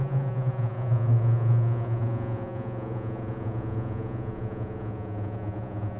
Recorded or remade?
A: remade